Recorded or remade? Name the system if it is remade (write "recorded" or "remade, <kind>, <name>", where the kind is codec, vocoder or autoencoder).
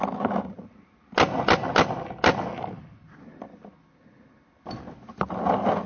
recorded